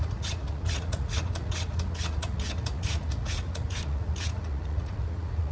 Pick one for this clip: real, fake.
fake